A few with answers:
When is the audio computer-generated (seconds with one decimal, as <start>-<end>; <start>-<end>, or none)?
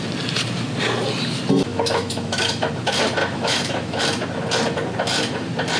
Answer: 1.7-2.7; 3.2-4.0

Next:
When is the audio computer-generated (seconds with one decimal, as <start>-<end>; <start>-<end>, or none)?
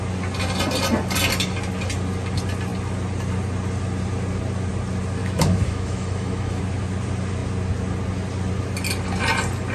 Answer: 5.2-6.6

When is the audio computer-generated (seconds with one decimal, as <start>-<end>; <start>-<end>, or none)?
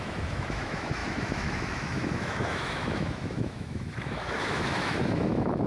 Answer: 0.0-5.7